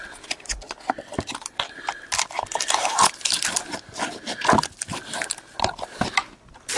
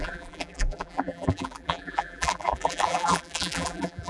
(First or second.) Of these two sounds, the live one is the first